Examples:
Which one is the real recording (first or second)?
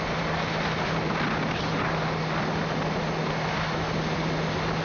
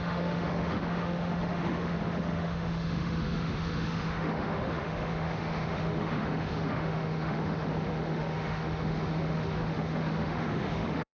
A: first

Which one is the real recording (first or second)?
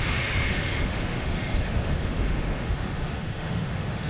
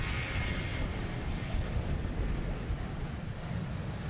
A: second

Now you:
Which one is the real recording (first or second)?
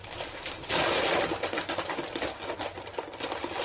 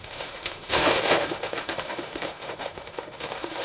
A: first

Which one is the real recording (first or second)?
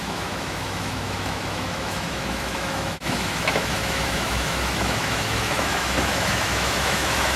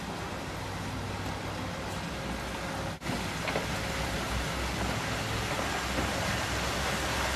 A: second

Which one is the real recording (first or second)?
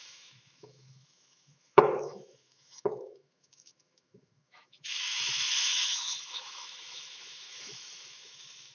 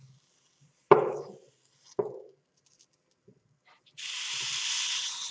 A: second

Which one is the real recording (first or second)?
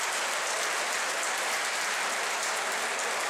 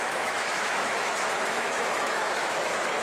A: first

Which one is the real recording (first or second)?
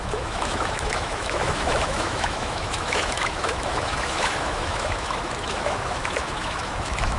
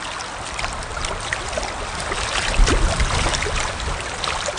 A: second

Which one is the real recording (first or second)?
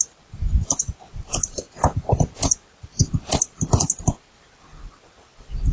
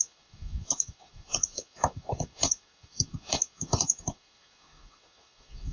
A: first